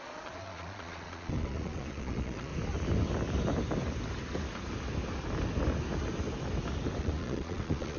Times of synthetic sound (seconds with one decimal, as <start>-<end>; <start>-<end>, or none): 0.0-2.5; 7.0-8.0